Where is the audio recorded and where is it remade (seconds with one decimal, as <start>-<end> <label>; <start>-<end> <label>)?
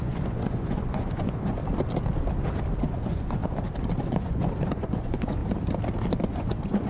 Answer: 0.0-1.6 remade; 1.6-2.8 recorded; 2.8-3.4 remade; 3.4-4.1 recorded; 4.1-5.4 remade; 5.4-6.1 recorded; 6.1-6.9 remade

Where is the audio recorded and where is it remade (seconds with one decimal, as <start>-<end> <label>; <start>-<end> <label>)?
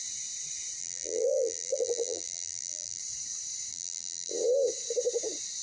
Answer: 0.0-0.8 recorded; 0.8-3.0 remade; 3.0-3.7 recorded; 3.7-4.3 remade; 4.3-5.6 recorded